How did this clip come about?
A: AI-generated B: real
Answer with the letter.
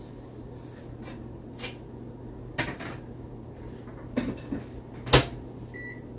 B